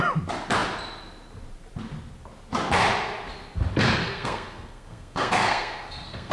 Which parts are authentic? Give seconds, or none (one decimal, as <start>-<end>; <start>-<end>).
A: 0.0-4.0